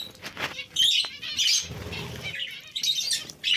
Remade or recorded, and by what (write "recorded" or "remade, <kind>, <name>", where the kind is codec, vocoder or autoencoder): recorded